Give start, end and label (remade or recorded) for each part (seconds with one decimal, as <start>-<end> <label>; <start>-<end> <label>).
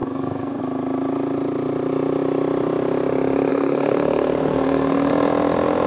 0.0-0.6 remade; 0.6-3.5 recorded; 3.5-5.1 remade; 5.1-5.9 recorded